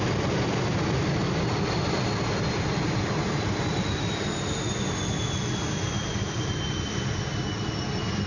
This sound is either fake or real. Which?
real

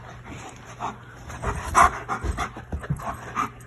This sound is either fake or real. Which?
real